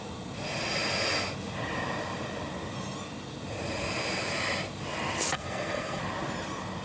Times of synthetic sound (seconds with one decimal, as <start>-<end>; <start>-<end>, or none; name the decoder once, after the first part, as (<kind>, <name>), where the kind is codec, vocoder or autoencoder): 5.3-6.0 (codec, SNAC)